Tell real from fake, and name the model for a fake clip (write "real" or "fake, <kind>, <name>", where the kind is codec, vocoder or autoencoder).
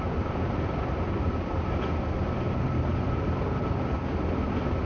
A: fake, vocoder, BigVGAN v2